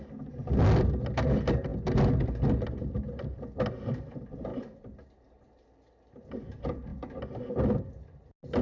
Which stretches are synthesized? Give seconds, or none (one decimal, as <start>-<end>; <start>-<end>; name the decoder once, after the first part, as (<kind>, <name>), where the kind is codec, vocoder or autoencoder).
4.5-5.1 (vocoder, BigVGAN v2)